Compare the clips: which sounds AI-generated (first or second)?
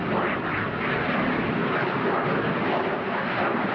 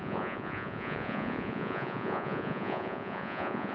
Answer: second